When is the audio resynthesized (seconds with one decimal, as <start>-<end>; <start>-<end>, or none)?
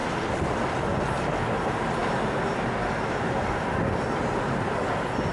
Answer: 0.0-0.6